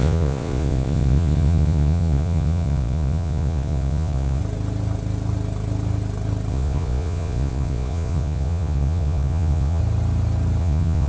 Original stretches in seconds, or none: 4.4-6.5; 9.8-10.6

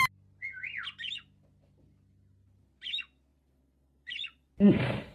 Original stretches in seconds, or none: 0.0-3.3; 4.5-5.1

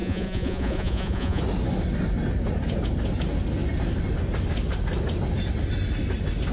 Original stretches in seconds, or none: 1.4-6.5

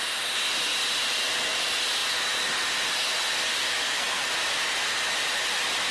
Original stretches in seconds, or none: 0.0-3.8; 4.3-5.9

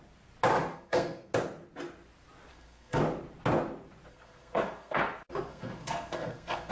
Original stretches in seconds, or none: 0.0-0.7; 1.3-2.5; 3.0-4.1; 5.0-5.5

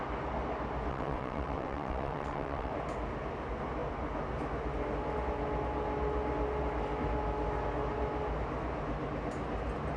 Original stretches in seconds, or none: 0.0-0.9; 2.7-10.0

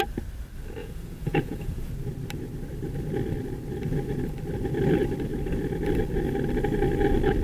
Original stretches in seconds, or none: 0.0-0.8; 1.9-7.4